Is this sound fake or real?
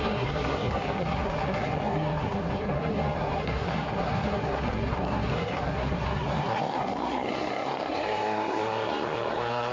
fake